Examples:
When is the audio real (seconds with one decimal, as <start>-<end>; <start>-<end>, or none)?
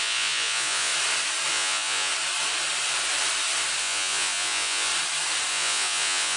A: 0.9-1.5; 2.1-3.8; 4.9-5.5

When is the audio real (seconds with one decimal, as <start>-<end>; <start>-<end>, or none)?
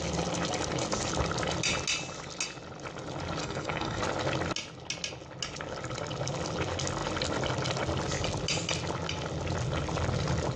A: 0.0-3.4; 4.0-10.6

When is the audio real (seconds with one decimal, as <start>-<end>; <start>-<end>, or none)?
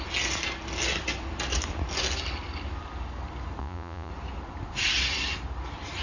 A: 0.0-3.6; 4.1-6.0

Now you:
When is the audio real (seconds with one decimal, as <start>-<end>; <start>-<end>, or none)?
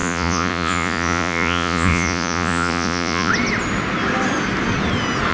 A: 3.3-5.3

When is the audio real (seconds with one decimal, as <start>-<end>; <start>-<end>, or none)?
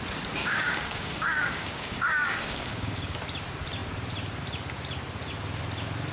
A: 0.0-0.4; 3.2-6.1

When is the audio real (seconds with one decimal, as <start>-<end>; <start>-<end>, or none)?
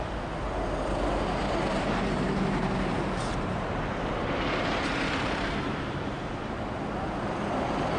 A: 0.0-1.7; 6.3-8.0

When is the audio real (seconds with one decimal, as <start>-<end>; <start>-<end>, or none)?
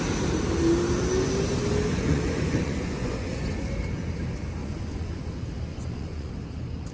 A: 0.0-1.9; 3.5-4.6; 5.2-5.7; 6.3-6.9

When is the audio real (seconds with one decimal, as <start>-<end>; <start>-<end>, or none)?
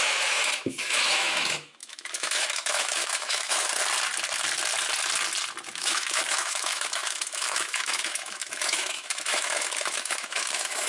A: 3.7-5.7